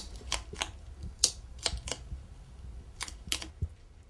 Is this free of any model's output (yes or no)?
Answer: yes